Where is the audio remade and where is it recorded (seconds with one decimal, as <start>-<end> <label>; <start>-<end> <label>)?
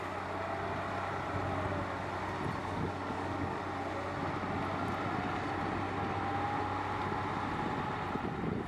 0.0-2.6 recorded; 2.6-3.6 remade; 3.6-8.7 recorded